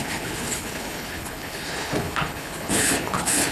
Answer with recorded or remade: remade